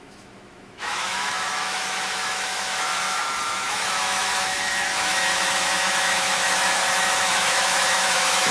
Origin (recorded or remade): remade